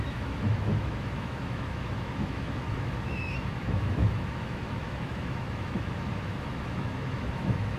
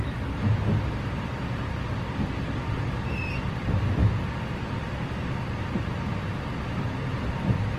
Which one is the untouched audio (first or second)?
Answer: second